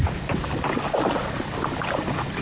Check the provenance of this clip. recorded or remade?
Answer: recorded